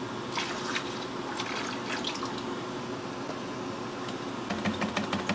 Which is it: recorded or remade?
recorded